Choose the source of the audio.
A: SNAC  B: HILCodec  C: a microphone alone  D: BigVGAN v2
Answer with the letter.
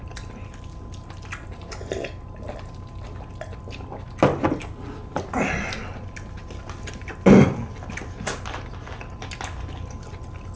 C